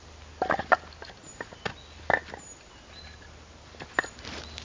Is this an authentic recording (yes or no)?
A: yes